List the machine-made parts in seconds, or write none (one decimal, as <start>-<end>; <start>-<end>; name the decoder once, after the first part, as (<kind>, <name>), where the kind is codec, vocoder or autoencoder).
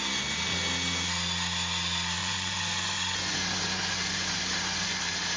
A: 2.2-5.0 (vocoder, Vocos)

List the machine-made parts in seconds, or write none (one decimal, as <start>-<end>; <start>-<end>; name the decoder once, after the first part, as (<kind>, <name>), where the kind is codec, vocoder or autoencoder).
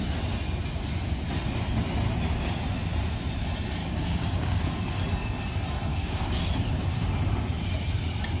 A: 3.8-4.6 (codec, DAC); 5.9-6.4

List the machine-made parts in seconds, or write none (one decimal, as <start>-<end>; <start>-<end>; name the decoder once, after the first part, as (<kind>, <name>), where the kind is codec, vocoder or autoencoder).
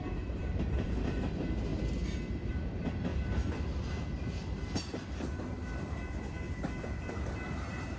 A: 0.0-1.7 (vocoder, BigVGAN v2); 2.5-3.1; 7.1-8.0